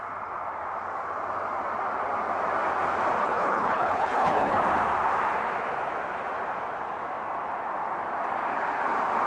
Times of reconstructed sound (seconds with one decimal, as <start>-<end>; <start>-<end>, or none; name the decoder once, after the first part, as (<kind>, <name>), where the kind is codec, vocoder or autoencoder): 3.2-4.6 (codec, HILCodec)